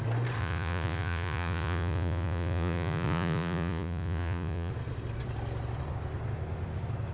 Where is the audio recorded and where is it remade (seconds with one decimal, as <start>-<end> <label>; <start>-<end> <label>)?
0.0-0.4 recorded; 0.4-4.7 remade; 4.7-7.1 recorded

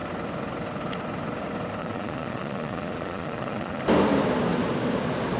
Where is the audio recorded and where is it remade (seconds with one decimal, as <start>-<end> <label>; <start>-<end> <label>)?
0.0-1.8 recorded; 1.8-3.8 remade; 3.8-5.4 recorded

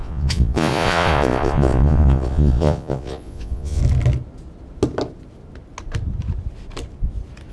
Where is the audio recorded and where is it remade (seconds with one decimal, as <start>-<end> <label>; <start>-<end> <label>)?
0.0-3.8 remade; 3.8-7.5 recorded

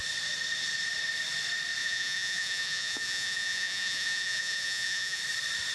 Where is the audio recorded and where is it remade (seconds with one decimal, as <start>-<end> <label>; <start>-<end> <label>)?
0.0-1.8 recorded; 1.8-5.2 remade; 5.2-5.7 recorded

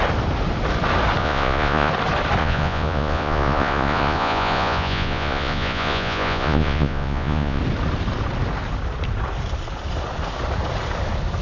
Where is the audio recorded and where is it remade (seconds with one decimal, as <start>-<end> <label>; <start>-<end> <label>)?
0.0-1.2 recorded; 1.2-1.9 remade; 1.9-2.4 recorded; 2.4-7.6 remade; 7.6-11.4 recorded

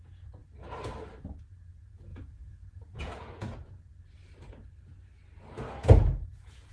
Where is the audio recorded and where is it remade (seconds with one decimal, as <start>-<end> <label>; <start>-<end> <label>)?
0.0-0.4 remade; 0.4-1.4 recorded; 1.4-3.6 remade; 3.6-6.0 recorded; 6.0-6.7 remade